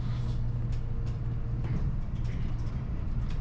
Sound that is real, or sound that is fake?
real